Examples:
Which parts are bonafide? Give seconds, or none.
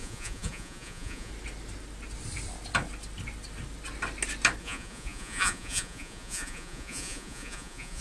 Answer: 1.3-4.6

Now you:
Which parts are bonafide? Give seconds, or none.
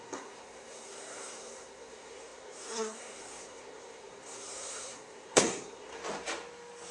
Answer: 6.0-6.9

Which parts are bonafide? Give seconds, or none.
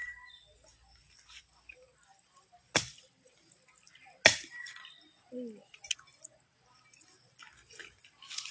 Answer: 0.0-8.5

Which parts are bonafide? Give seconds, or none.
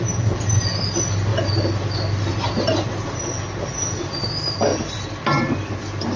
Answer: 0.0-6.2